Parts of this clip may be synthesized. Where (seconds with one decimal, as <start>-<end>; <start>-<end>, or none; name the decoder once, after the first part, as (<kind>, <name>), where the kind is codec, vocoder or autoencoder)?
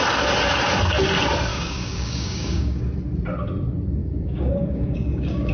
1.5-2.8 (codec, DAC); 4.0-5.5